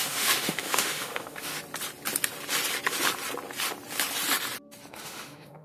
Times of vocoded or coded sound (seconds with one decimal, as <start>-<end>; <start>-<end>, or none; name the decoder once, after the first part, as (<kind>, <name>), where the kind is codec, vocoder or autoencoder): 0.0-1.5 (autoencoder, DAC-VAE); 4.9-5.6